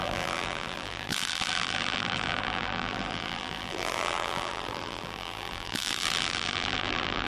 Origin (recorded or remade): remade